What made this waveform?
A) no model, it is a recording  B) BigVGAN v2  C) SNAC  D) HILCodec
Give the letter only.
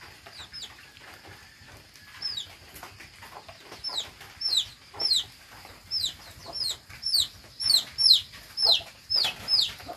A